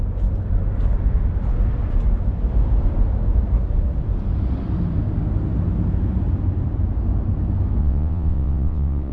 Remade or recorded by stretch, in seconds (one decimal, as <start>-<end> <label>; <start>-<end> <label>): 0.0-7.8 recorded; 7.8-9.1 remade